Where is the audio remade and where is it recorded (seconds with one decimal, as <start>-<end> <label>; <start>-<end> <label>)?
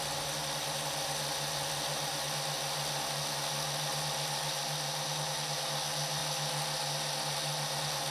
0.0-8.1 recorded